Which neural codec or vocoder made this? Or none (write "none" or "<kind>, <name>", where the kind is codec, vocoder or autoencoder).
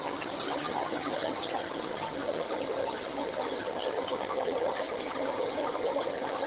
vocoder, HiFi-GAN